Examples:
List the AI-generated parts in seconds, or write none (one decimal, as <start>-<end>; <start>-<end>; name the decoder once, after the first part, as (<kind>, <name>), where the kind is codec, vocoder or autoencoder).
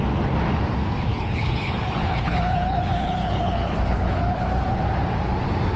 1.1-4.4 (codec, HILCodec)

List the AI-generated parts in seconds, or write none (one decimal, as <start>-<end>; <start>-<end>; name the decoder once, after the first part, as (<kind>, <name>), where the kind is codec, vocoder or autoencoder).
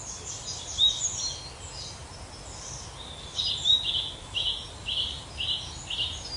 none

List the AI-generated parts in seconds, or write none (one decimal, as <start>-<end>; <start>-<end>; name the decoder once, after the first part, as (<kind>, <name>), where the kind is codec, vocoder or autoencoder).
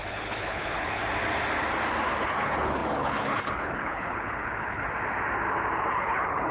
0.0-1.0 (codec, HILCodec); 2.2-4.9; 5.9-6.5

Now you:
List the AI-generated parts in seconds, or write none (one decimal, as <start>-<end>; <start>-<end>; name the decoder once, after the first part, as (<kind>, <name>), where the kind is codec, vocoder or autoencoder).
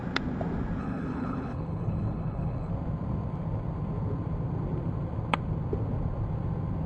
0.8-2.7 (codec, HILCodec)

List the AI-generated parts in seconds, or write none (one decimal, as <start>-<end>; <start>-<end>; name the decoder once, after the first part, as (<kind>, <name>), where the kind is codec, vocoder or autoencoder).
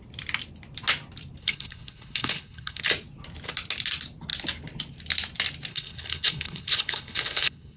1.4-2.8 (codec, HILCodec); 5.7-7.8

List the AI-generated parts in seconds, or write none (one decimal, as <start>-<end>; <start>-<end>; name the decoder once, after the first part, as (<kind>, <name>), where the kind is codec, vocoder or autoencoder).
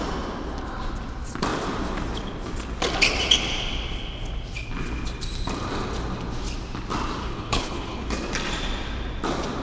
7.2-8.1 (codec, HILCodec)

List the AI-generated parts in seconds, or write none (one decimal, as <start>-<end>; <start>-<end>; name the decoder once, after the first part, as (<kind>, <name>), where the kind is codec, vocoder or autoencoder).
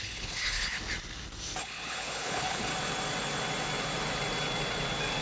0.0-0.8 (codec, HILCodec); 1.6-2.7